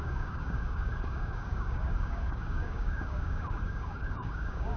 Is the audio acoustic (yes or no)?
no